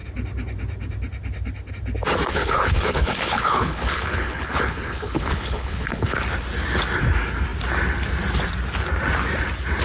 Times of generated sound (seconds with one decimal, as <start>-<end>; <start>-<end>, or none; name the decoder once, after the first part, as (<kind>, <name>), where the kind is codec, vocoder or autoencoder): 2.3-6.2 (codec, HILCodec)